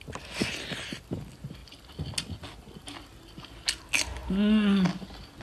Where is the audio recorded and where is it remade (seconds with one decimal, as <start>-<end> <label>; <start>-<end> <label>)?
0.0-5.4 recorded